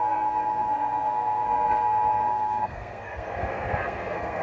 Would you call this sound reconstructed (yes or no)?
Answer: yes